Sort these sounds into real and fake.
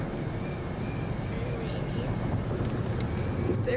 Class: real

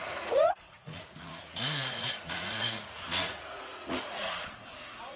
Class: fake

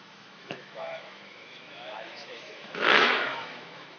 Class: fake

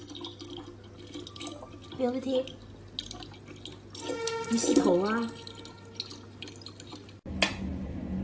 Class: real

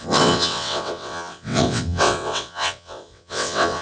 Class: fake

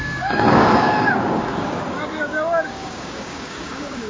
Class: fake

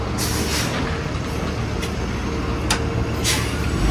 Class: real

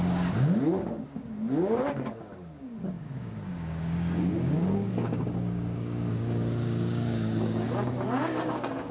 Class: fake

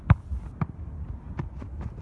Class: real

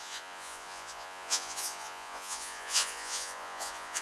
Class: fake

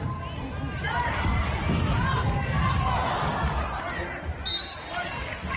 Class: real